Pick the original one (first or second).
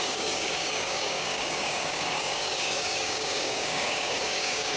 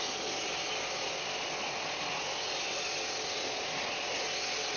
second